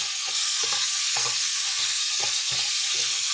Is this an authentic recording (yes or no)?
no